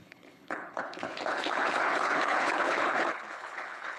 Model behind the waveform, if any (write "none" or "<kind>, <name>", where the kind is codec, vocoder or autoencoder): codec, HILCodec